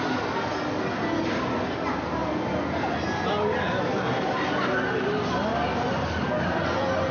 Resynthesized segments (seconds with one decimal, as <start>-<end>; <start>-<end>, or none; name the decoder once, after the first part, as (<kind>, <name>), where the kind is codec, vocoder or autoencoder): none